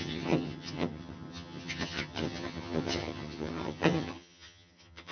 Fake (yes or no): yes